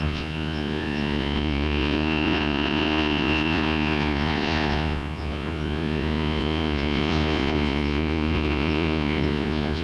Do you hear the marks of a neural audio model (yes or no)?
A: yes